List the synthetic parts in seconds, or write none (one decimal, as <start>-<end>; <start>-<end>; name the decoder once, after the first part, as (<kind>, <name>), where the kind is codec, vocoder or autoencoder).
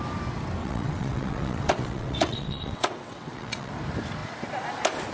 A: 0.6-3.7 (vocoder, WaveNeXt)